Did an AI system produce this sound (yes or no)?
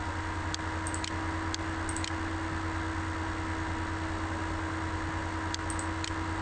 no